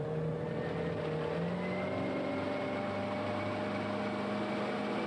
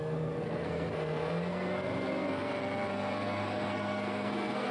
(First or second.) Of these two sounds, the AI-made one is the second